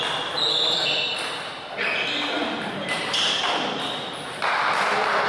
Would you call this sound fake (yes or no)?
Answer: no